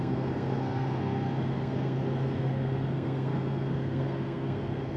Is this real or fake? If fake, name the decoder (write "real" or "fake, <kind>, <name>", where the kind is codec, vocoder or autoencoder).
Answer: fake, codec, SNAC